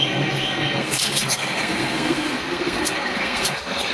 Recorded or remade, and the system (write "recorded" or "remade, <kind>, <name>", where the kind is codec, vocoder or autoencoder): remade, codec, SNAC